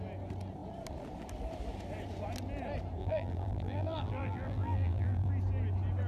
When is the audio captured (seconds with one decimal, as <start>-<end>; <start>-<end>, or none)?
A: 0.0-3.0; 5.3-6.1